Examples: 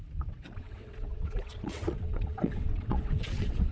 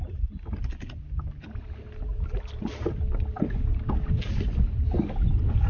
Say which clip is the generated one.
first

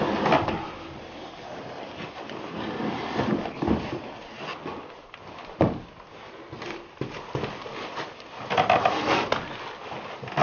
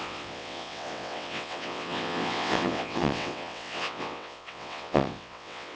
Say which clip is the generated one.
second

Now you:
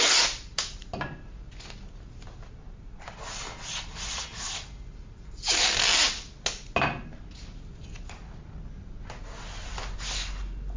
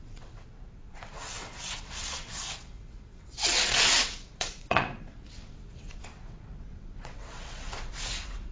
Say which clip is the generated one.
second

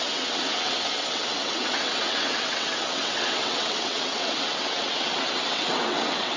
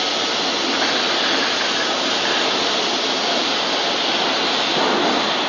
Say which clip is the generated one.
first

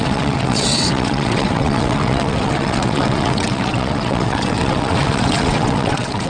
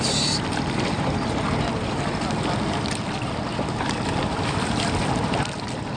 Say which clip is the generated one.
first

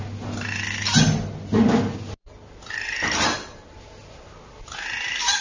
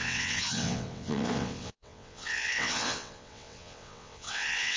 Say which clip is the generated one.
second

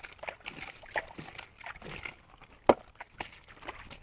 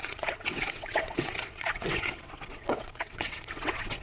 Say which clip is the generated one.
second